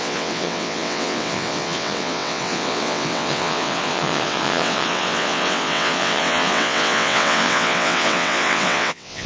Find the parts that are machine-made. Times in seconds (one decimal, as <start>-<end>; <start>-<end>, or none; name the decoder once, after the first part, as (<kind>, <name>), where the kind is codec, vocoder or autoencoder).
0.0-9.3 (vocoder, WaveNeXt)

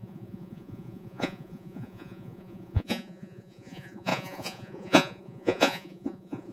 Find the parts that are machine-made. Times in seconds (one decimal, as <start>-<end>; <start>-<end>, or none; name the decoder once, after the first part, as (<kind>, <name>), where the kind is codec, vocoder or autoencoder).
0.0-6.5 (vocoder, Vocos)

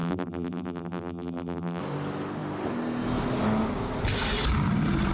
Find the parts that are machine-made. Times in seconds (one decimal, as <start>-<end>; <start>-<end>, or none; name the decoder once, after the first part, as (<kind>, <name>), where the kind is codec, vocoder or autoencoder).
0.0-1.8 (vocoder, BigVGAN v2)

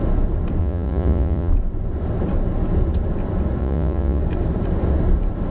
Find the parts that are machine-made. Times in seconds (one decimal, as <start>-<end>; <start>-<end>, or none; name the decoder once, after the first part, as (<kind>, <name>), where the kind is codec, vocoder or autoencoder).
0.6-1.5 (vocoder, Vocos); 3.6-4.2

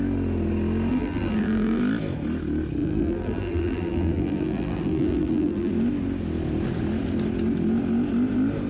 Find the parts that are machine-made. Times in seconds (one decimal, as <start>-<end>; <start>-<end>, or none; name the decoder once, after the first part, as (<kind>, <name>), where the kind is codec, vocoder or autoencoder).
0.9-1.8 (vocoder, BigVGAN v2); 2.8-5.7

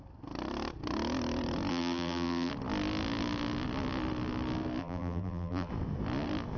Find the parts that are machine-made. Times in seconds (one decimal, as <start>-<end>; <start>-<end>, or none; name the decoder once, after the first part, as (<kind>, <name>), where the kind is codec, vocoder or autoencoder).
1.7-2.5 (vocoder, BigVGAN v2); 4.8-5.7

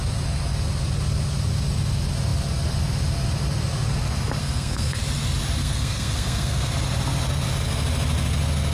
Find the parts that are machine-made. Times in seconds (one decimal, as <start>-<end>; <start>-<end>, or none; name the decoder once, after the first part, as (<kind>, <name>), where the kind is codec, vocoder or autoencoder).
4.4-5.0 (codec, SNAC); 5.6-6.7